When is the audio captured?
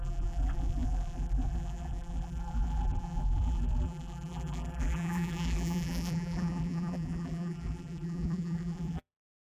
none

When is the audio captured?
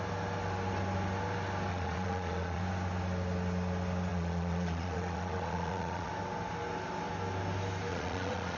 0.0-1.7; 2.6-4.1; 6.1-7.9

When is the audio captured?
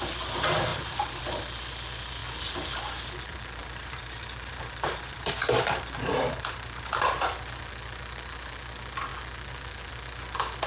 0.0-0.7; 1.2-3.6; 6.9-10.7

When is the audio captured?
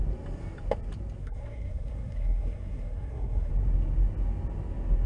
0.0-1.2; 3.5-5.1